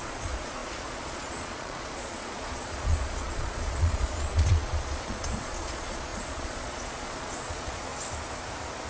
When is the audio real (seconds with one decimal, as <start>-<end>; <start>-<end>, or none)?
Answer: 7.9-8.9